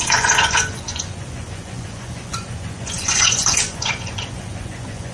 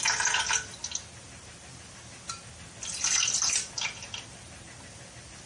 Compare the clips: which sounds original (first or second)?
second